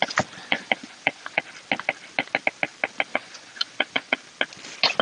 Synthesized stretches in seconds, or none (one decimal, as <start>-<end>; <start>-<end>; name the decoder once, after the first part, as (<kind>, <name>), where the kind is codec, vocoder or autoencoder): 0.4-1.4 (vocoder, Vocos); 3.1-4.2